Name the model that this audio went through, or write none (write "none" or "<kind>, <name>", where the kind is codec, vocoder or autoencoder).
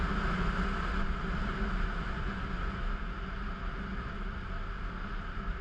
none